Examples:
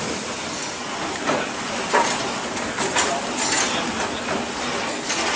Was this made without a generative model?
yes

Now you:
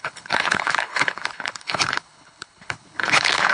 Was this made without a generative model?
no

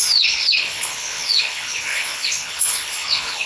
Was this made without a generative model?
no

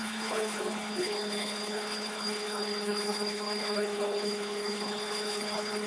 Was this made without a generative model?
no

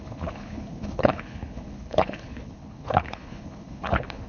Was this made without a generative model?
no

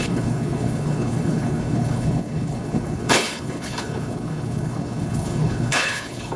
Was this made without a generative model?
no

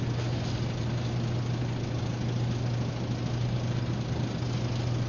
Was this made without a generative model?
yes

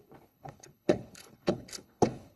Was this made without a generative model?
no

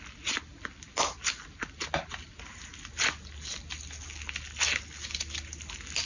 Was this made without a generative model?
yes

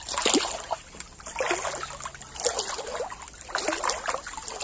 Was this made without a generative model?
yes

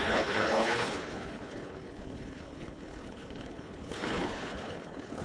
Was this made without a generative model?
no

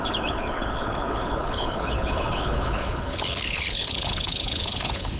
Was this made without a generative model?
no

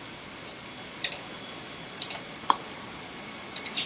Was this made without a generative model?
yes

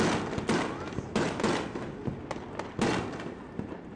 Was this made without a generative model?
yes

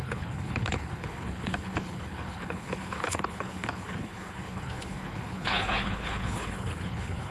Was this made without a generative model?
no